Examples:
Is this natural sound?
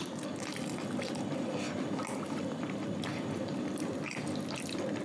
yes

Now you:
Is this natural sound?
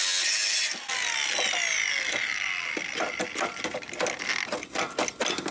yes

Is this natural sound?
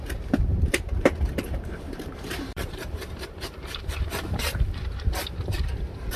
no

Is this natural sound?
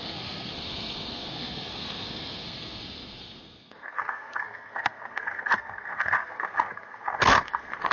no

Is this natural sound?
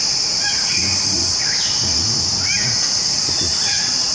no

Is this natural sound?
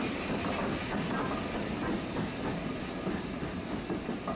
yes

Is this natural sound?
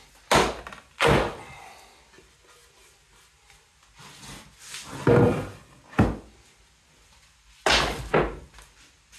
yes